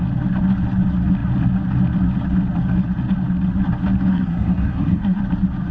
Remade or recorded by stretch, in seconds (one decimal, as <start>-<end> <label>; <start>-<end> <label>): 0.0-4.1 recorded; 4.1-5.2 remade; 5.2-5.7 recorded